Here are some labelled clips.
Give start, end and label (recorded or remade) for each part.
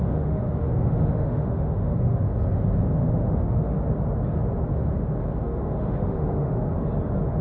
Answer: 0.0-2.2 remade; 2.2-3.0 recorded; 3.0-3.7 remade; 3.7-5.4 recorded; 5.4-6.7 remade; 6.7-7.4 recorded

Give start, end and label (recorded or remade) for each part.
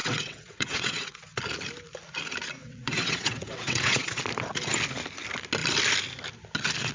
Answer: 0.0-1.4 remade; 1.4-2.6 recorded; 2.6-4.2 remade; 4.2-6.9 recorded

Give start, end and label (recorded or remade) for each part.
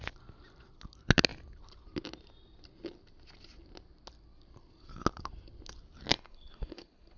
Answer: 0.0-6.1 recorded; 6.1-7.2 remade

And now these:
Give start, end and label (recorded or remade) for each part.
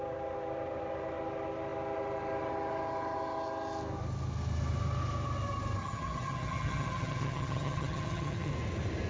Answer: 0.0-5.8 recorded; 5.8-8.5 remade; 8.5-9.1 recorded